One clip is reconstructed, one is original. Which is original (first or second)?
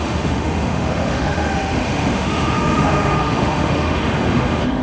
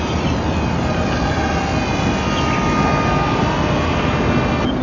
second